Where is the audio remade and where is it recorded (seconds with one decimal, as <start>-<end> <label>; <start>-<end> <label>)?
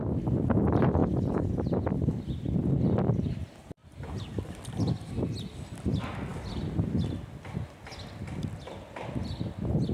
0.0-3.8 recorded; 3.8-4.4 remade; 4.4-9.9 recorded